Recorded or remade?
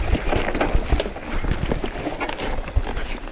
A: recorded